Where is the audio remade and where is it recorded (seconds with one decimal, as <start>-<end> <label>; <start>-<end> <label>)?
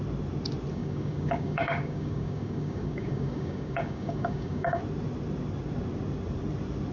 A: 0.0-0.7 recorded; 0.7-4.8 remade; 4.8-6.9 recorded